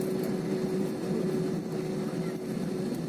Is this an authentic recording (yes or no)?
yes